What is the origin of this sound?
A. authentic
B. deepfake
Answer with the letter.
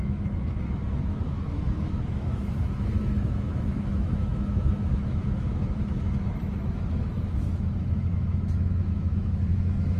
B